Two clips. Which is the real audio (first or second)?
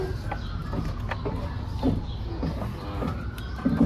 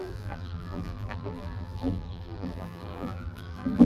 first